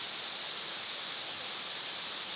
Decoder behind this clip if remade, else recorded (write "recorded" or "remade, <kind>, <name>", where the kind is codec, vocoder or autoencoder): recorded